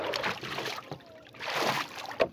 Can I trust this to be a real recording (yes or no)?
yes